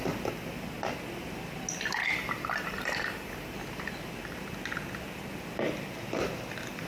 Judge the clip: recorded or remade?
recorded